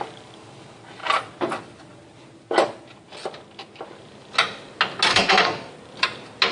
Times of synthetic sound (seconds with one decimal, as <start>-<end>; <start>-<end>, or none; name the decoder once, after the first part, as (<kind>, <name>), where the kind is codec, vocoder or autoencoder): 5.1-5.7 (codec, SNAC)